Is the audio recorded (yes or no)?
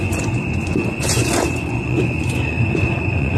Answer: no